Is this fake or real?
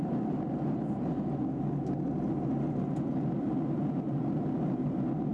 real